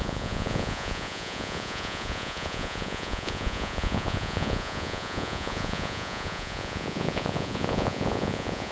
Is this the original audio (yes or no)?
no